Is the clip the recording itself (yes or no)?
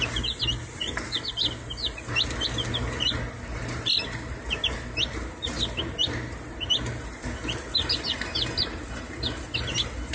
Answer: yes